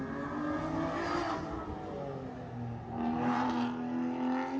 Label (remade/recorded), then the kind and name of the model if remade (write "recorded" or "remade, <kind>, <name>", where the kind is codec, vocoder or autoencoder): recorded